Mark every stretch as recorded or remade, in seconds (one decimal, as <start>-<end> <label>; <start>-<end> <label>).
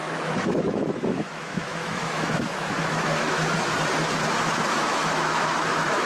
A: 0.0-3.4 remade; 3.4-4.7 recorded; 4.7-6.1 remade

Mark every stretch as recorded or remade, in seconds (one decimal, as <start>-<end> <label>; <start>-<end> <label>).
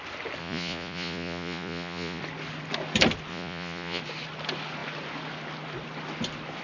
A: 0.0-0.4 recorded; 0.4-2.2 remade; 2.2-3.3 recorded; 3.3-4.0 remade; 4.0-6.6 recorded